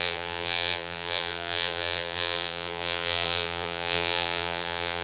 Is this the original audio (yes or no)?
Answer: no